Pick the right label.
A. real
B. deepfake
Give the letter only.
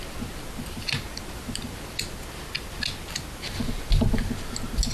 A